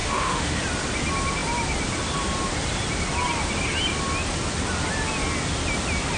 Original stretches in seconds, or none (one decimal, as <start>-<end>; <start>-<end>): 0.6-6.2